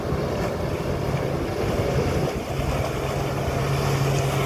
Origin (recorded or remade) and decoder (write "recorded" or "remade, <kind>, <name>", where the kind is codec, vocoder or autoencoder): recorded